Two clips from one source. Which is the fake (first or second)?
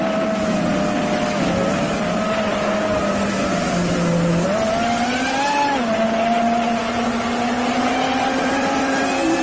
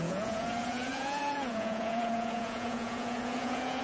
second